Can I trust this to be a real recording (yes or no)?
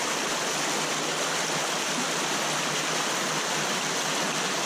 yes